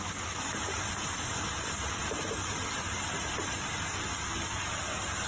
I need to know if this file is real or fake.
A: real